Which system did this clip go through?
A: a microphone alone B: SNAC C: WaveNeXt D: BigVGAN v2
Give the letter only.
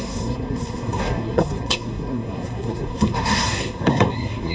B